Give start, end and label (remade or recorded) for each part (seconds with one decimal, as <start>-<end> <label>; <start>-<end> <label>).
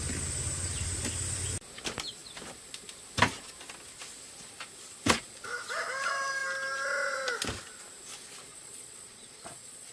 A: 0.0-8.5 recorded; 8.5-9.9 remade